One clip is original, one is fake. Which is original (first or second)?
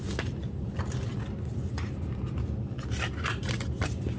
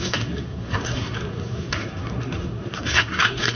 first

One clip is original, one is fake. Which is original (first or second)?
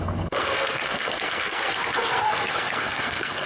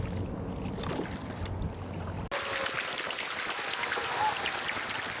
second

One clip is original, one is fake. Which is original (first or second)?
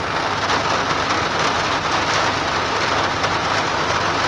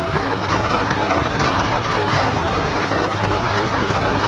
first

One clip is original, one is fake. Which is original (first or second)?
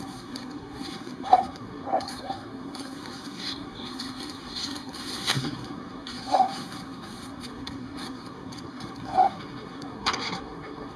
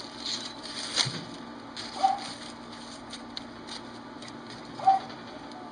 second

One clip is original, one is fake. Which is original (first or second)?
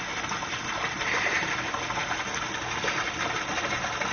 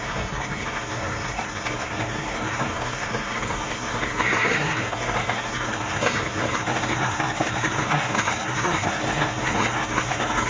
first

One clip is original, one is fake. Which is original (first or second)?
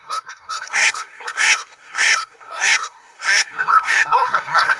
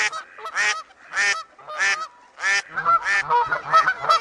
second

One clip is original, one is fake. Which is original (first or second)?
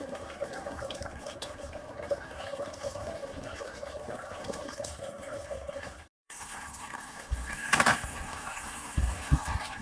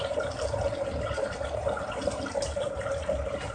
second